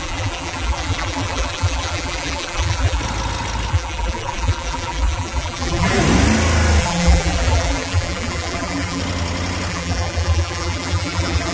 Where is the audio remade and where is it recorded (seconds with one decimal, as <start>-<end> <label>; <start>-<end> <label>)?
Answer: 0.0-3.0 remade; 3.0-3.7 recorded; 3.7-6.0 remade; 6.0-6.8 recorded; 6.8-9.0 remade; 9.0-9.7 recorded; 9.7-11.5 remade